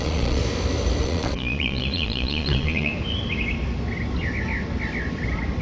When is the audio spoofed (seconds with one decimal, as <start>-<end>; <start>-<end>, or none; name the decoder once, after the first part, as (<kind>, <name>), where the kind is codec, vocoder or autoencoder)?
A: 0.0-0.4 (vocoder, Vocos); 1.0-2.9